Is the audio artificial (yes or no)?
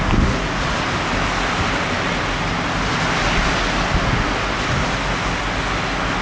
no